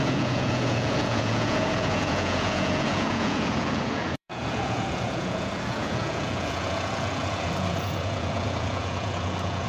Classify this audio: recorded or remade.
remade